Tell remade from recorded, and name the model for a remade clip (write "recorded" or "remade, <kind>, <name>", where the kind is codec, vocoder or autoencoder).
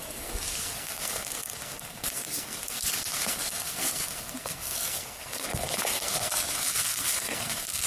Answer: remade, codec, SNAC